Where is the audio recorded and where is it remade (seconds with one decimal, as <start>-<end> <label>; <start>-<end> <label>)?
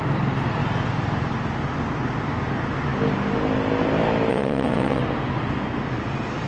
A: 0.0-4.3 recorded; 4.3-5.0 remade; 5.0-6.5 recorded